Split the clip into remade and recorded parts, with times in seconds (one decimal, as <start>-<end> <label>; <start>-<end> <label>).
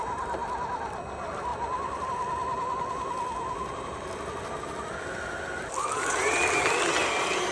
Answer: 0.0-7.5 recorded